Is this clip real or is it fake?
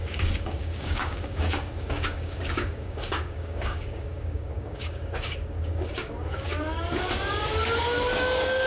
fake